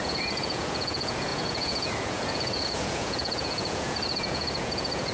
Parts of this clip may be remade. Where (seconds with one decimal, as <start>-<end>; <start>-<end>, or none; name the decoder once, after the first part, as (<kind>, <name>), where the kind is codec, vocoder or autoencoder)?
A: 0.0-5.1 (vocoder, Vocos)